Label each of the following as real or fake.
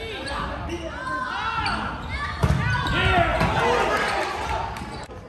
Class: real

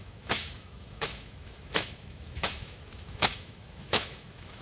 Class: fake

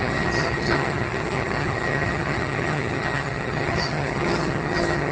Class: fake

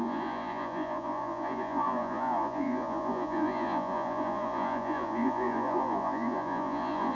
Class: fake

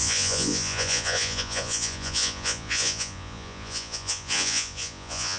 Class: fake